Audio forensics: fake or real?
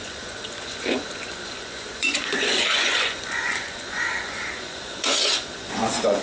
fake